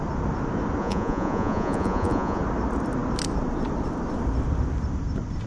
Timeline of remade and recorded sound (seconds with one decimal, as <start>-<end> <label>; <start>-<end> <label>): 0.0-0.8 recorded; 0.8-2.4 remade; 2.4-5.5 recorded